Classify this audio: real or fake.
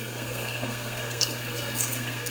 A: fake